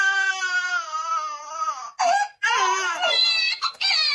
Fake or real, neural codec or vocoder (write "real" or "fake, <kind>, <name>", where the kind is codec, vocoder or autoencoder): real